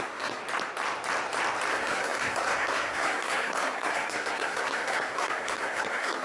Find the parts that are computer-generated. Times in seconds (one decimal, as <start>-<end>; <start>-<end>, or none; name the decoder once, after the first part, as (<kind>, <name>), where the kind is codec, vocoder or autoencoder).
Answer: 0.0-0.4 (codec, SNAC); 1.7-6.2